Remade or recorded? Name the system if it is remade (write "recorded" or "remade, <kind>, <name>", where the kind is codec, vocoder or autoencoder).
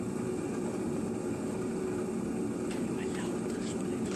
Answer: recorded